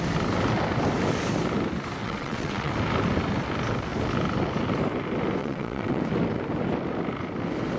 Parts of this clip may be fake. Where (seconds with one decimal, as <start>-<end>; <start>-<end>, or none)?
2.0-2.7; 5.4-6.0